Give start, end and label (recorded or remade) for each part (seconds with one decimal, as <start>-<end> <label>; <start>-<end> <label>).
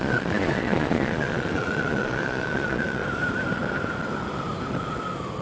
0.0-3.0 remade; 3.0-5.4 recorded